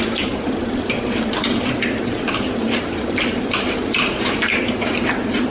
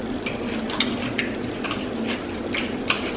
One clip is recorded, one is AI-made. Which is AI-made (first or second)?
first